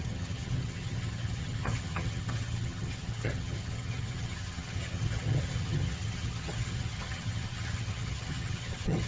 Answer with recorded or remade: remade